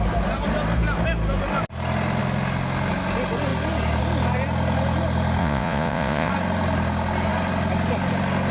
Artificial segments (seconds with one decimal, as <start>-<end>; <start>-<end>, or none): 5.4-6.3